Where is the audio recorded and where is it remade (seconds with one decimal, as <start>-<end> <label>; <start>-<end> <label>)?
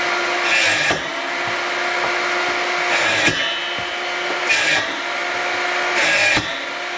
0.0-7.0 recorded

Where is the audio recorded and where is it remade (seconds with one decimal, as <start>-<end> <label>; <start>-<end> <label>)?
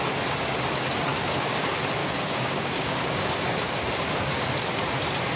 0.0-1.1 recorded; 1.1-1.6 remade; 1.6-2.0 recorded; 2.0-3.4 remade; 3.4-5.4 recorded